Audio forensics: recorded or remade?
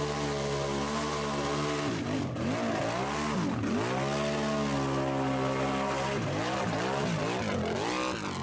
recorded